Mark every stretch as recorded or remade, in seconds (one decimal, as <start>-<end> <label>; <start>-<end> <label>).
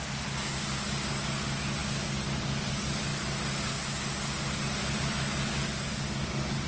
0.0-6.7 recorded